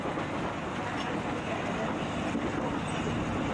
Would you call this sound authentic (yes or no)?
yes